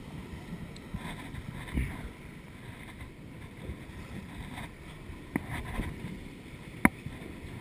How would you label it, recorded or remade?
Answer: recorded